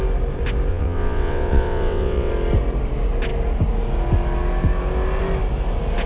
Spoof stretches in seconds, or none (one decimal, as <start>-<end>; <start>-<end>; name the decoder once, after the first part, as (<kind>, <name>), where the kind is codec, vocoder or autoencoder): 0.7-2.3 (vocoder, WaveNeXt)